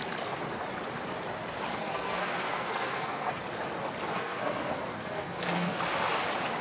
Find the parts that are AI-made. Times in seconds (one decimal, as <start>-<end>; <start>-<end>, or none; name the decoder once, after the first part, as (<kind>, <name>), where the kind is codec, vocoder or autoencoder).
1.7-3.4 (codec, SNAC); 4.1-5.8